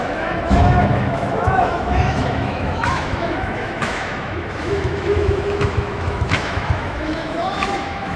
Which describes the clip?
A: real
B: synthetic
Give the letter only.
B